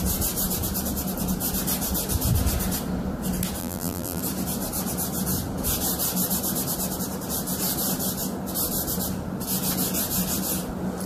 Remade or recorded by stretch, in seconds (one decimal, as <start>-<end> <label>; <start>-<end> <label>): 0.0-3.6 recorded; 3.6-4.2 remade; 4.2-11.1 recorded